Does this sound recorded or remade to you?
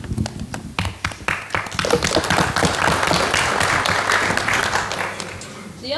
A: recorded